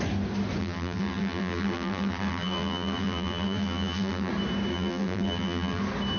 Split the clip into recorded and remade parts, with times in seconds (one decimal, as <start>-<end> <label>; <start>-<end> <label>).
0.0-0.6 recorded; 0.6-4.3 remade; 4.3-4.7 recorded; 4.7-5.8 remade; 5.8-6.2 recorded